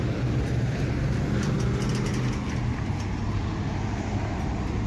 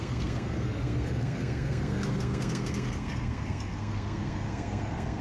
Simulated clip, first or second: second